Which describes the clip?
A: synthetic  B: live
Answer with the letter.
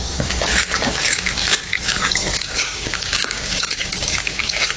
A